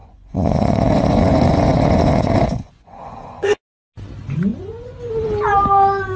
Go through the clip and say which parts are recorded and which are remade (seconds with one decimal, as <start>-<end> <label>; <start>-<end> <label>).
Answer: 0.0-3.6 remade; 3.6-4.5 recorded; 4.5-5.0 remade; 5.0-6.2 recorded